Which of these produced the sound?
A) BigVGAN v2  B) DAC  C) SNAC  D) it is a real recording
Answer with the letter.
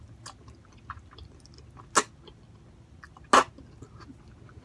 D